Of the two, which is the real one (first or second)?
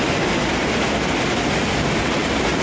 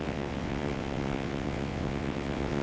first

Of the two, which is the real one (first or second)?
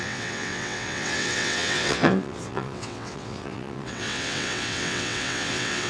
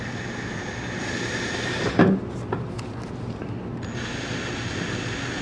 second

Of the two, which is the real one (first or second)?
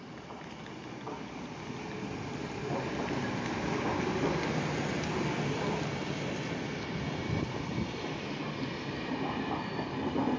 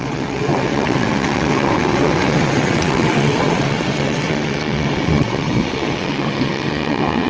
first